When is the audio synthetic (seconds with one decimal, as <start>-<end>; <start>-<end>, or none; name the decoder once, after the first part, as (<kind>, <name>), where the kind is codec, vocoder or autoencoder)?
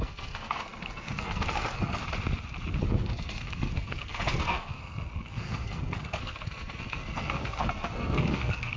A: 0.0-2.0 (codec, SNAC); 2.8-8.8